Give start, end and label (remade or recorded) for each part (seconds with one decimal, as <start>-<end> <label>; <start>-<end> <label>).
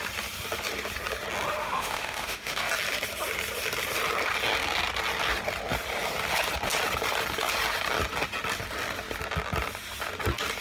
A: 0.0-1.6 recorded; 1.6-2.7 remade; 2.7-10.6 recorded